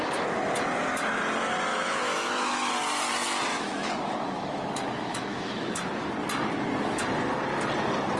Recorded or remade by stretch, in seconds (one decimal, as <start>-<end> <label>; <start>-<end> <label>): 0.0-1.7 recorded; 1.7-2.7 remade; 2.7-3.5 recorded; 3.5-6.1 remade; 6.1-8.2 recorded